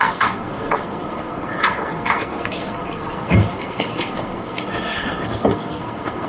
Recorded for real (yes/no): no